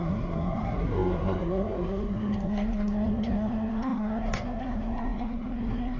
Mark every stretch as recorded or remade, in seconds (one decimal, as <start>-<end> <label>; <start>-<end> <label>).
0.0-6.0 remade